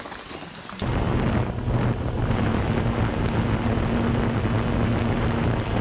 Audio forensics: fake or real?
real